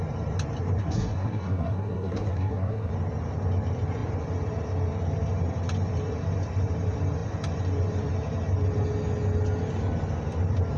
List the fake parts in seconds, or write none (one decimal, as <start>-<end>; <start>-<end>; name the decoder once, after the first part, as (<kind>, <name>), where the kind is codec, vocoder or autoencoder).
0.8-2.9 (codec, SNAC)